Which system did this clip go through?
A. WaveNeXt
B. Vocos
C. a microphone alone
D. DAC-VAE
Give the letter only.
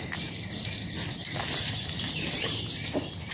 C